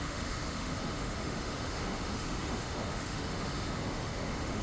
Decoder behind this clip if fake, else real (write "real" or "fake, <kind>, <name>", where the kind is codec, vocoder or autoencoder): fake, autoencoder, DAC-VAE